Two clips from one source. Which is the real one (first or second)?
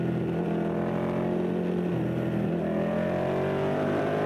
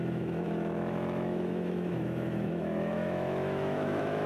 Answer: first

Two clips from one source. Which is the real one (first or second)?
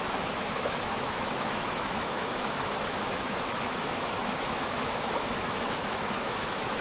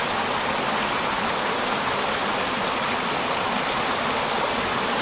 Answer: second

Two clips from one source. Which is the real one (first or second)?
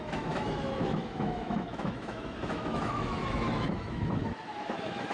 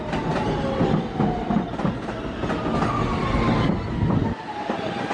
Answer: second